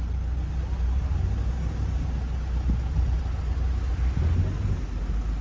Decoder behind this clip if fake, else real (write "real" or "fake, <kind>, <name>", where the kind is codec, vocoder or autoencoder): real